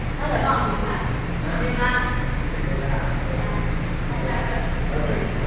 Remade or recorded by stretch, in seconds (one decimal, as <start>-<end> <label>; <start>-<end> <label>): 0.0-5.5 recorded